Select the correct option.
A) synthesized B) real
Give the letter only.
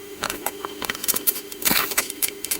A